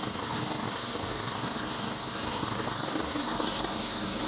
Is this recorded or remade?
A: remade